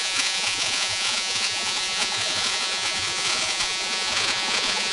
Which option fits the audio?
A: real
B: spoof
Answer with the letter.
B